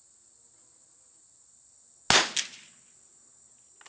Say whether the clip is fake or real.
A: real